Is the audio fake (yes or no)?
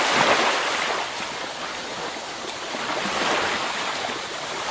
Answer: yes